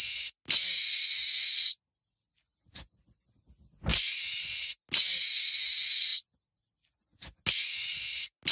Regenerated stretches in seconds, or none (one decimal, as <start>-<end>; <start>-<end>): none